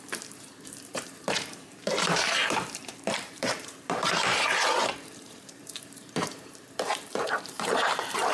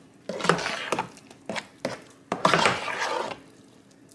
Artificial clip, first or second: first